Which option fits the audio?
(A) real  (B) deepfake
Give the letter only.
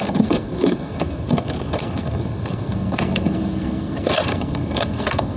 B